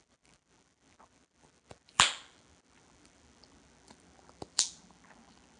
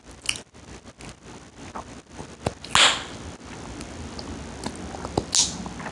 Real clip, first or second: second